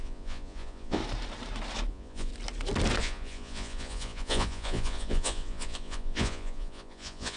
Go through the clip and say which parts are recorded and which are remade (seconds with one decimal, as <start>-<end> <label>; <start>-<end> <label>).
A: 0.0-1.0 remade; 1.0-1.9 recorded; 1.9-2.3 remade; 2.3-3.0 recorded; 3.0-7.4 remade